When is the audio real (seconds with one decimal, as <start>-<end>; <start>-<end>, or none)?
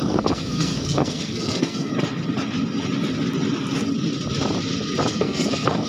1.9-5.1